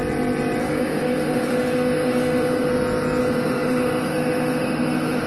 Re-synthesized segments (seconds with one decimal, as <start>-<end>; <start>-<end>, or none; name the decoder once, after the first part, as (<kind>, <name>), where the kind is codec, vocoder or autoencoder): 0.6-2.7 (autoencoder, DAC-VAE); 3.2-5.3